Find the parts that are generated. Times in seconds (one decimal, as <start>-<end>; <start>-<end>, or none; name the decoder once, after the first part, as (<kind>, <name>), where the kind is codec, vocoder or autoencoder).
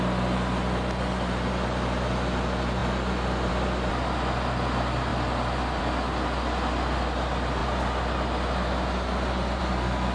none